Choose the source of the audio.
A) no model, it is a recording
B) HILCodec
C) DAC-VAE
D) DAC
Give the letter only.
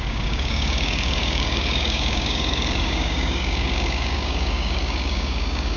D